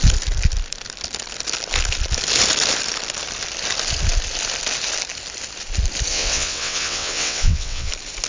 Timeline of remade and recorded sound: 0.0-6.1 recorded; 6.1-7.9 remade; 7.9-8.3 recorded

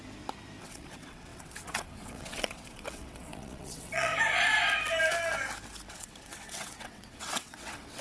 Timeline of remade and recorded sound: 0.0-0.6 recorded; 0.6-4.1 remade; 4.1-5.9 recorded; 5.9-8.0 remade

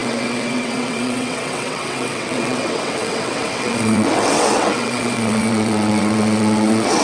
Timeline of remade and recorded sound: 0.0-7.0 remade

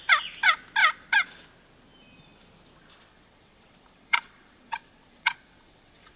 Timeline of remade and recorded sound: 0.0-2.9 recorded; 2.9-6.2 remade

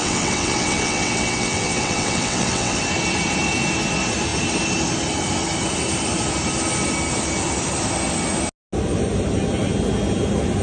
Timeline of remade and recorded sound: 0.0-2.8 remade; 2.8-10.6 recorded